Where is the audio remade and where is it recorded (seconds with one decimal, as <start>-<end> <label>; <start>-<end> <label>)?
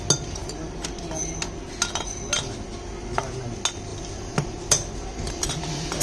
0.0-0.4 recorded; 0.4-1.0 remade; 1.0-3.9 recorded; 3.9-5.5 remade; 5.5-6.0 recorded